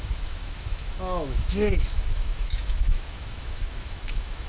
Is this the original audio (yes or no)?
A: no